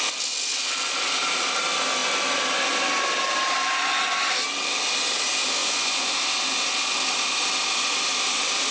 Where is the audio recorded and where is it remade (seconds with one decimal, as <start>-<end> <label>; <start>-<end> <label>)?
0.0-5.6 recorded; 5.6-6.1 remade; 6.1-8.7 recorded